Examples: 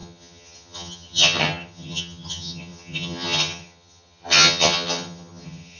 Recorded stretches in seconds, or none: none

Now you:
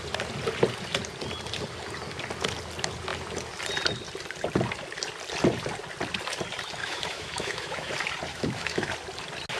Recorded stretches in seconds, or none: 0.0-6.8; 7.9-8.3; 8.9-9.6

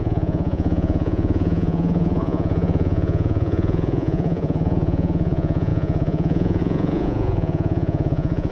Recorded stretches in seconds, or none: none

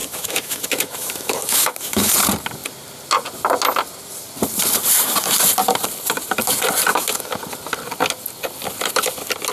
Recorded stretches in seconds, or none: 2.1-6.9; 7.4-9.5

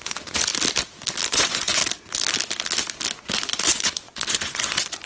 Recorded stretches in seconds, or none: 0.5-1.3; 1.8-3.6